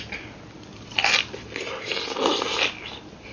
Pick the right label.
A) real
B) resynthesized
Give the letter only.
A